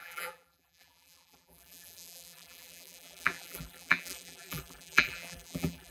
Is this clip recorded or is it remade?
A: remade